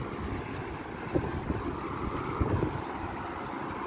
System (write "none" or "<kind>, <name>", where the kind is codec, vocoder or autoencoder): none